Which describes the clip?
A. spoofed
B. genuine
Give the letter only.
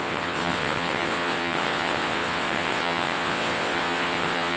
A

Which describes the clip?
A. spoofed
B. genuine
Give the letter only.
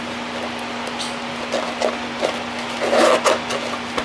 B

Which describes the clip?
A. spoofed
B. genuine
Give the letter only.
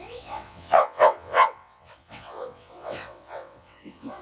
A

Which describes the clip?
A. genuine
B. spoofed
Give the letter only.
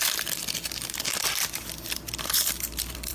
B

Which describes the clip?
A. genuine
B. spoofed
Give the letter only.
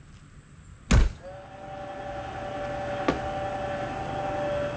A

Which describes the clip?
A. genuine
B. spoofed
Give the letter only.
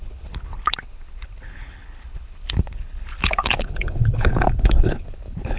B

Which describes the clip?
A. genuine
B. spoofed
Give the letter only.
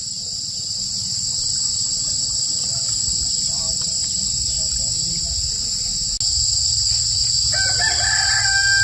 A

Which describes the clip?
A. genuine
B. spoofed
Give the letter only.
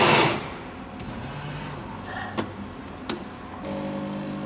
A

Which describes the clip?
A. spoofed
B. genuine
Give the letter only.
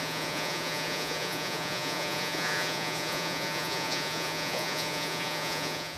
A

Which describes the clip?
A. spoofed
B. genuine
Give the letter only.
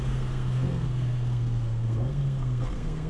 A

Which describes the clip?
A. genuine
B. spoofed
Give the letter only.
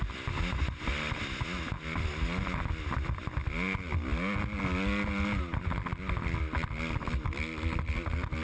A